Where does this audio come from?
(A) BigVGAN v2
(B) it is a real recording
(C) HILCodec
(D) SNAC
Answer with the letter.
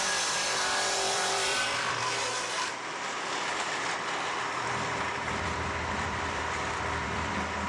A